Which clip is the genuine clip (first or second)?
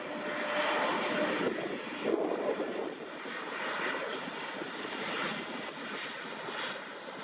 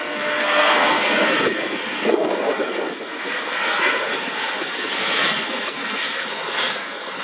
first